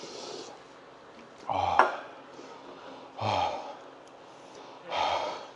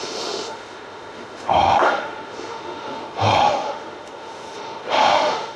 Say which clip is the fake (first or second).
second